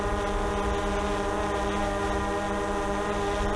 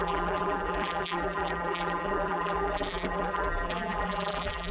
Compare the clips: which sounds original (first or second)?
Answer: first